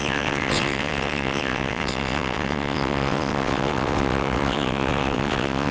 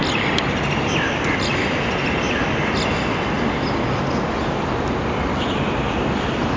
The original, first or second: second